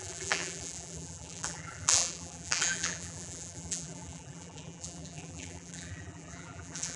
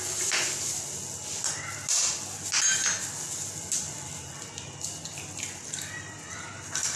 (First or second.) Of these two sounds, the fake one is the first